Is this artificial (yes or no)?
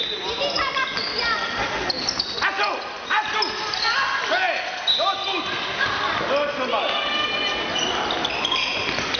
no